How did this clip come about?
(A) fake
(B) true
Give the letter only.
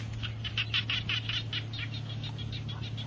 B